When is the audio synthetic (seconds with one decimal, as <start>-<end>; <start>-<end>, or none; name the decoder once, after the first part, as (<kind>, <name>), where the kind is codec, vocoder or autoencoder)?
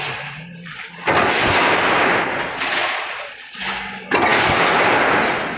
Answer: 2.8-3.6 (vocoder, Vocos)